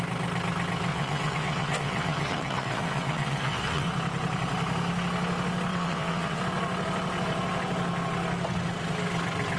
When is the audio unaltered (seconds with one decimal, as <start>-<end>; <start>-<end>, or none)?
0.0-0.9; 3.9-5.7; 6.4-9.6